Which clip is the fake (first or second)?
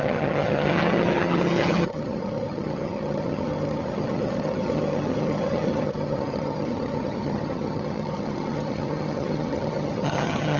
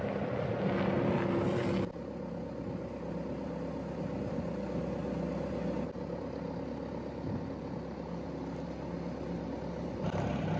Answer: first